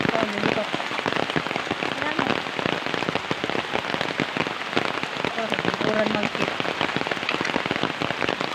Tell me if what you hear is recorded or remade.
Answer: recorded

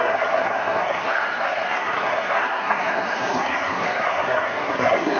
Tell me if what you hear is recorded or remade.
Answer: remade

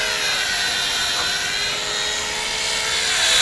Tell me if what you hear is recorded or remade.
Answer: recorded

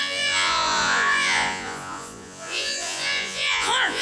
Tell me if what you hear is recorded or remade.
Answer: remade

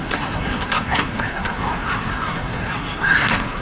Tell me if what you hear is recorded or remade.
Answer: remade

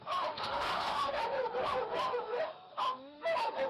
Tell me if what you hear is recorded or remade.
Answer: remade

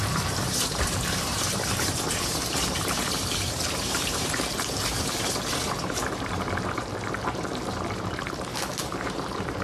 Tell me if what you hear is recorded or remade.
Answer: remade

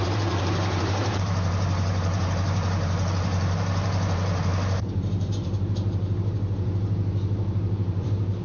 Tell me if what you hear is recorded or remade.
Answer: remade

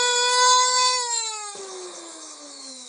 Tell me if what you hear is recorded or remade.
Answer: remade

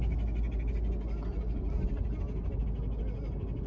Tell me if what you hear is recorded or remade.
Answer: recorded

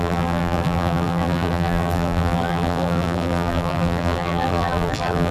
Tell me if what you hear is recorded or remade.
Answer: remade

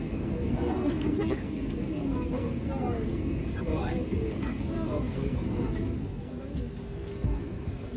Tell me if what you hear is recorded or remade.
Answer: remade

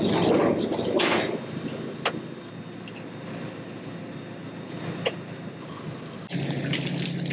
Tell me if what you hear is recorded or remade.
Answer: recorded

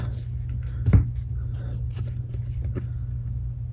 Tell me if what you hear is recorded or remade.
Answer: recorded